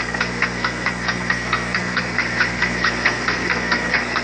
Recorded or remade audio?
remade